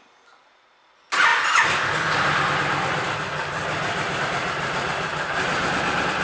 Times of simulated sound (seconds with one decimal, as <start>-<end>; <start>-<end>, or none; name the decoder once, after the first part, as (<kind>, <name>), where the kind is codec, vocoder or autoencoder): none